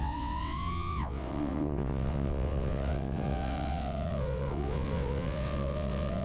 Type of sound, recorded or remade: remade